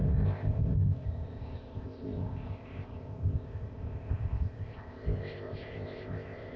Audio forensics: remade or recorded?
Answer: remade